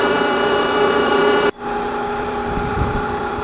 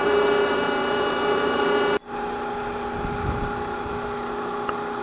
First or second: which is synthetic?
first